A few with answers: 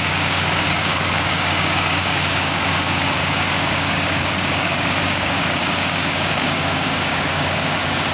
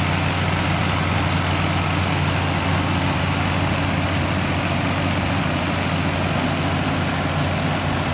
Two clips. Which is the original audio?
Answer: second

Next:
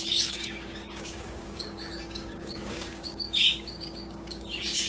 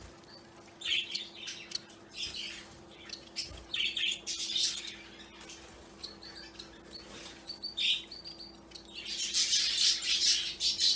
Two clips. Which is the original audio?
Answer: second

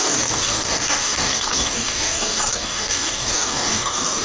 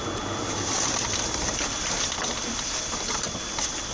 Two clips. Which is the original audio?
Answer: second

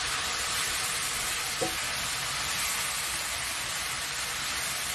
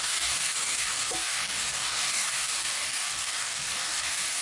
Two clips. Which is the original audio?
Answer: first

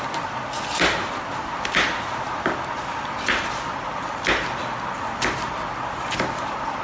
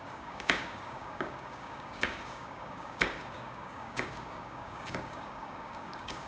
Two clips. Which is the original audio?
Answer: first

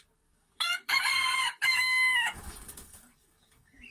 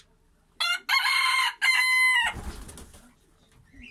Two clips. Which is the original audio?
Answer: second